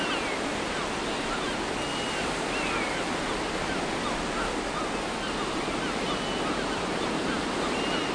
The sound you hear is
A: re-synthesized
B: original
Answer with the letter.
B